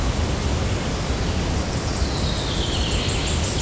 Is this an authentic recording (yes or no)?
yes